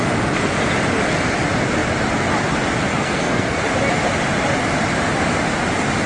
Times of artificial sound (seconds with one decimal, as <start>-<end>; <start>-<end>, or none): 2.9-3.6